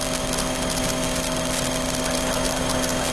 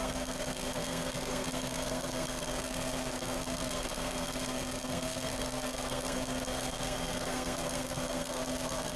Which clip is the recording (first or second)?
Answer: first